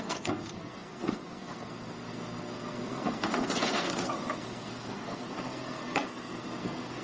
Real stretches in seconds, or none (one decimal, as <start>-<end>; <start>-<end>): none